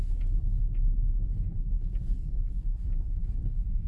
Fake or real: real